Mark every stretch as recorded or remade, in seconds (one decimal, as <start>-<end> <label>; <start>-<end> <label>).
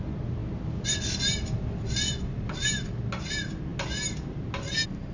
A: 0.0-5.1 recorded